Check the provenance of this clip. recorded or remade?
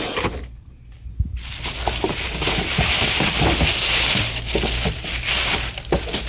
recorded